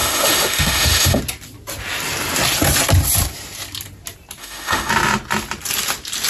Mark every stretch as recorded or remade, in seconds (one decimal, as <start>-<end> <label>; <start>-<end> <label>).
0.0-1.2 remade; 1.2-4.4 recorded; 4.4-4.9 remade; 4.9-6.3 recorded